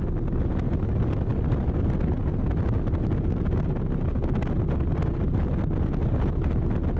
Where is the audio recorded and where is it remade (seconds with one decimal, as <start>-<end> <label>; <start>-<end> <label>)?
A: 0.0-7.0 recorded